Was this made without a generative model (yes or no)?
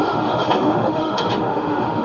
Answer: no